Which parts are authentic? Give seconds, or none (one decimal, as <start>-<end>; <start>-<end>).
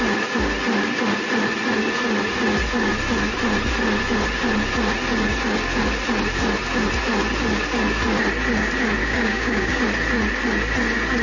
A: 0.0-9.0; 9.8-11.2